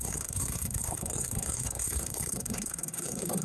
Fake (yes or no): yes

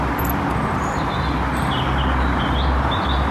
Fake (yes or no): no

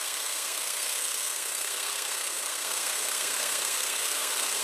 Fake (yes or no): yes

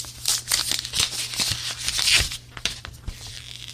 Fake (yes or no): no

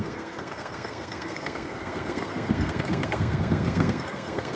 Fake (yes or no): yes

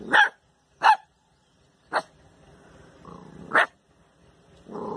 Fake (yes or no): no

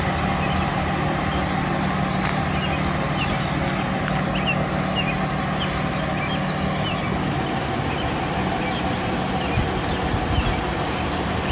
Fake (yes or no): no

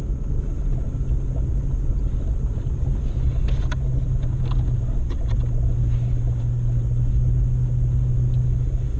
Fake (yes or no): no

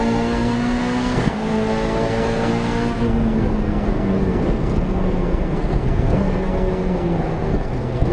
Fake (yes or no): yes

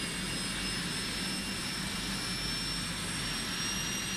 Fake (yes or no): no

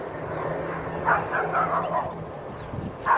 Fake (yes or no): no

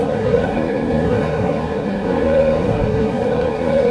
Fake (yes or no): yes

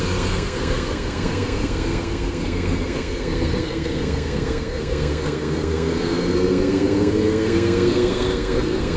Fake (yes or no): yes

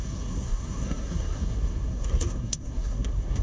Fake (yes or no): yes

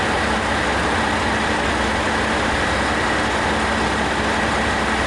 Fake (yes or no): no